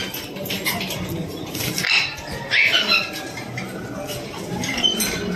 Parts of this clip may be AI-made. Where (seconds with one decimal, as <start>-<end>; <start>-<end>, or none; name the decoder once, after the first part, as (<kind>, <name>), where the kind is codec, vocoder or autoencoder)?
none